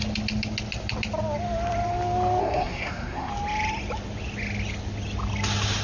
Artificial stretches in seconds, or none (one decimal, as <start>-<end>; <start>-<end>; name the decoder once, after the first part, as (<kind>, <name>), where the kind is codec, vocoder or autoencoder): 2.4-3.3 (codec, SNAC)